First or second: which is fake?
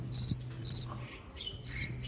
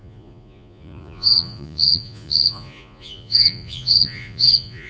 second